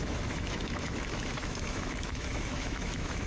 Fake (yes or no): yes